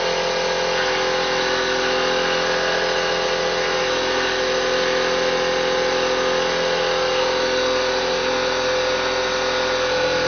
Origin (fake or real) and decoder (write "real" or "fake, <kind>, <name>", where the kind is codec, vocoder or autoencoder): real